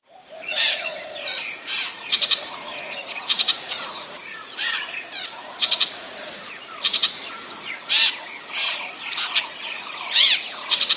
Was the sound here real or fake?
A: fake